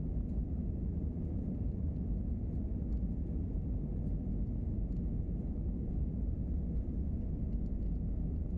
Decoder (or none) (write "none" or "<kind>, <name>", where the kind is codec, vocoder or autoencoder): none